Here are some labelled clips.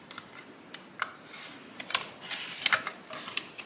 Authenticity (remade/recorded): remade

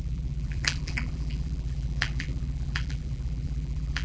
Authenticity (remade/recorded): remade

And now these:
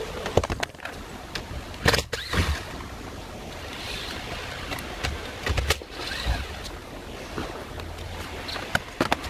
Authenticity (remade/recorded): recorded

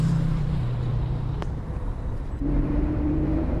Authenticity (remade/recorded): remade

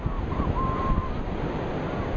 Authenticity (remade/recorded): remade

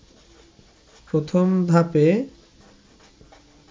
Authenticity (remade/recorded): recorded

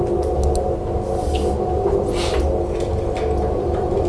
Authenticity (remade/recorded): recorded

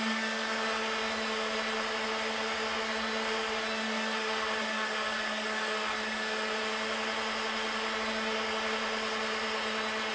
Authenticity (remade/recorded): recorded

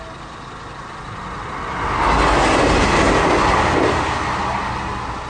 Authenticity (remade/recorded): recorded